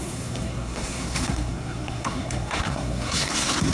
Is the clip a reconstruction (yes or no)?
yes